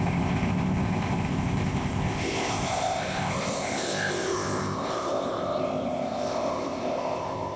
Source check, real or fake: fake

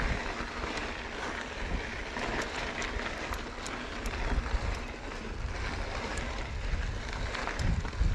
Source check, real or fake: real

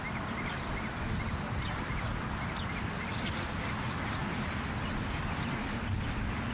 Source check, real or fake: real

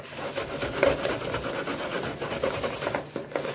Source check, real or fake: real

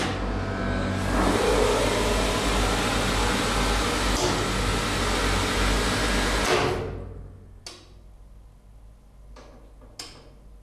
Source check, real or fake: real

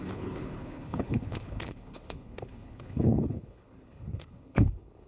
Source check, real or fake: fake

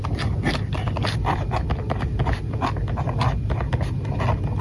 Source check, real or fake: real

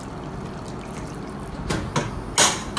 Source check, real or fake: real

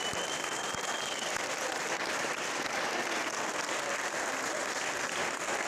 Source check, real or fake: real